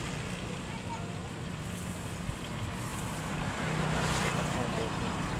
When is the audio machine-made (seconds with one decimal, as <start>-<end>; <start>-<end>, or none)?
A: 2.9-5.4